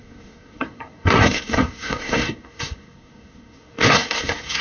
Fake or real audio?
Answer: fake